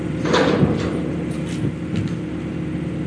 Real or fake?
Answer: real